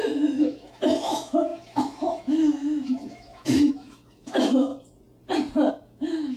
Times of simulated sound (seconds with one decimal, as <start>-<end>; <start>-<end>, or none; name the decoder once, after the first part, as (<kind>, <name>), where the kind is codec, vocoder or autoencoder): 0.0-4.7 (autoencoder, DAC-VAE); 5.7-6.4